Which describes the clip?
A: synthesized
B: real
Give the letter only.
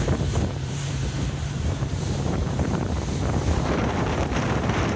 A